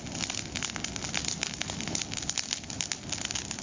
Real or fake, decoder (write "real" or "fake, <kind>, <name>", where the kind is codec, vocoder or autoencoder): real